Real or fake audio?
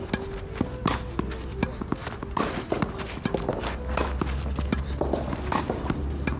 real